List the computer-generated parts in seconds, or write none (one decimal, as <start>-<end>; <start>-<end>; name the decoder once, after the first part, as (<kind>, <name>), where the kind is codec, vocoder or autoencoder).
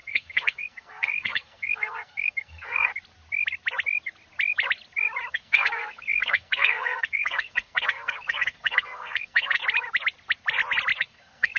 0.0-2.9 (codec, SNAC); 5.3-9.6; 11.0-11.6